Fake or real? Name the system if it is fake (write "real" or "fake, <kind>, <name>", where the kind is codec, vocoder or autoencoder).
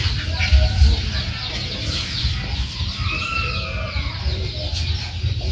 real